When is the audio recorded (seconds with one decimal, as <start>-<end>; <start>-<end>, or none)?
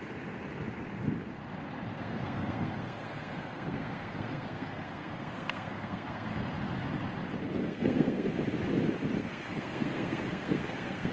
0.0-1.9; 6.3-7.6; 8.3-9.2